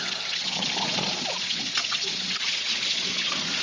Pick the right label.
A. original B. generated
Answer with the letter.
B